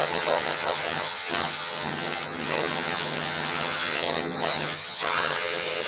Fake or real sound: fake